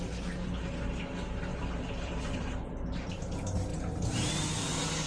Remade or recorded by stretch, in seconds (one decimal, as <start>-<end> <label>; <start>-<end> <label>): 0.0-1.5 recorded; 1.5-2.5 remade; 2.5-3.7 recorded; 3.7-5.1 remade